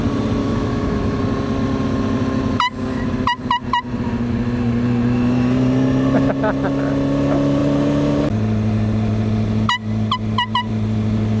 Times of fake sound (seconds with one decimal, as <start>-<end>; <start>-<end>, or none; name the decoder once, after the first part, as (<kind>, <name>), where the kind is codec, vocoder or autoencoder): 0.4-1.2 (autoencoder, DAC-VAE)